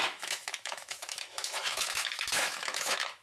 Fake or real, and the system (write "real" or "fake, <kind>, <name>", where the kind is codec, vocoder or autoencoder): fake, autoencoder, DAC-VAE